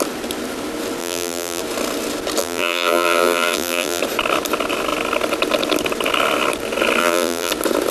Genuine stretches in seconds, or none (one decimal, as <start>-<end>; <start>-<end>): 0.0-1.0; 1.6-2.4; 4.0-7.0; 7.5-7.9